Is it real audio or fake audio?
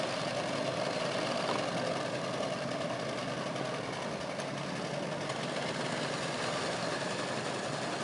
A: real